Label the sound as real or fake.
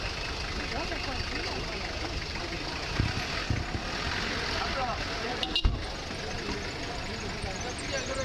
real